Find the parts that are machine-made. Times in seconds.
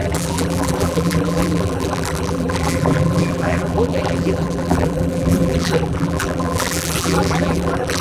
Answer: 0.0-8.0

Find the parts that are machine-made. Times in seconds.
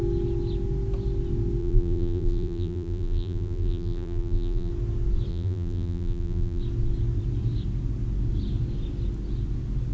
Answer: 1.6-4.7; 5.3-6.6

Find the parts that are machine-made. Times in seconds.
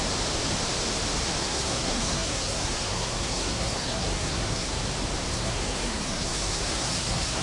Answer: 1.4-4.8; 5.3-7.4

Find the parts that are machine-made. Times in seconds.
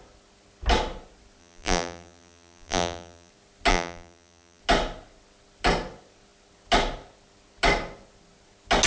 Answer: 1.4-3.3; 3.7-4.6